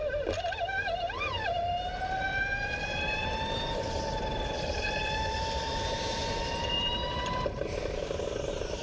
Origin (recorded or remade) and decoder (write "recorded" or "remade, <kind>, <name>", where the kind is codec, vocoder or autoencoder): recorded